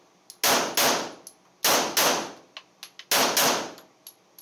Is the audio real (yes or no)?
yes